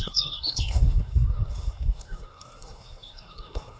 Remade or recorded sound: remade